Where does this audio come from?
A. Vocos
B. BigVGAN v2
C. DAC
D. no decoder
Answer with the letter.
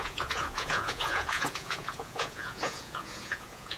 A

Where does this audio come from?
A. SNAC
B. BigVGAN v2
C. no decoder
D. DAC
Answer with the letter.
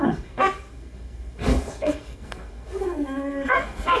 A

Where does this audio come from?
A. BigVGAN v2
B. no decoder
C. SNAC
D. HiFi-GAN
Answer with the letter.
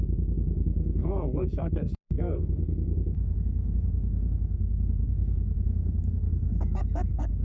C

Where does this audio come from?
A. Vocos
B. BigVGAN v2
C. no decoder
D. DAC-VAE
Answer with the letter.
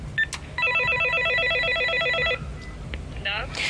C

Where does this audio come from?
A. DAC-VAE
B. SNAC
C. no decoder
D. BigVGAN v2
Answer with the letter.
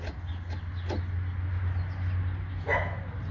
C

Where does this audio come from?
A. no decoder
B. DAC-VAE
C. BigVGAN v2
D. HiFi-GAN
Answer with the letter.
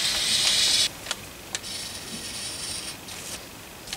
A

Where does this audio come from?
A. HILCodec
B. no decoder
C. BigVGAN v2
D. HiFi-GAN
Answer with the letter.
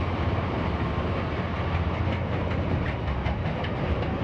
B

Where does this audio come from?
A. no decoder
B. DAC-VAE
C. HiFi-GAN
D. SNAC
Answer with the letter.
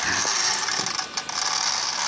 A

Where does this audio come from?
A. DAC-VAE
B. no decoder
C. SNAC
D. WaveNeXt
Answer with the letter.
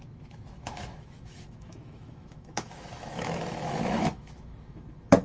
A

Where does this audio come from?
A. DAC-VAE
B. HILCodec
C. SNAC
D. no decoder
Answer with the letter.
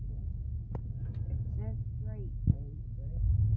D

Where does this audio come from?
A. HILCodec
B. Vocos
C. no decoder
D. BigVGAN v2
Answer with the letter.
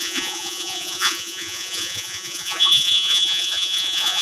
B